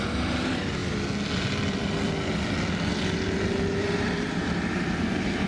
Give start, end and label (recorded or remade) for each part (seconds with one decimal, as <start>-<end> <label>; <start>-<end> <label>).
0.0-0.8 remade; 0.8-3.8 recorded; 3.8-5.5 remade